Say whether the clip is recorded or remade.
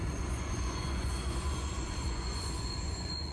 remade